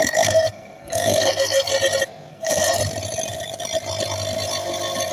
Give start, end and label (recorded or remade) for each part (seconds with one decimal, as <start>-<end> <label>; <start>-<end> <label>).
0.0-1.7 remade; 1.7-2.3 recorded; 2.3-2.8 remade; 2.8-5.1 recorded